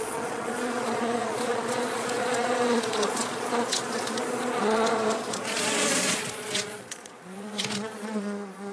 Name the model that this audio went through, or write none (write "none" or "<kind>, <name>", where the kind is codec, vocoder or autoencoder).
vocoder, Vocos